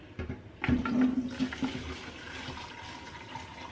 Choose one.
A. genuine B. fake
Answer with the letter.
A